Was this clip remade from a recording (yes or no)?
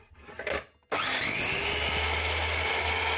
no